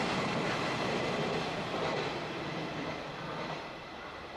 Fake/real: real